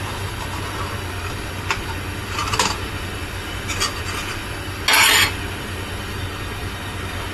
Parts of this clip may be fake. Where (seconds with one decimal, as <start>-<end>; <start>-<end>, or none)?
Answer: none